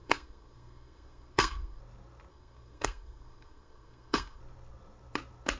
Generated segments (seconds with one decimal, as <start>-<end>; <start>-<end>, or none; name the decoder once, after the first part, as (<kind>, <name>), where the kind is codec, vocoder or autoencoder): 0.0-1.8 (codec, SNAC); 2.3-4.4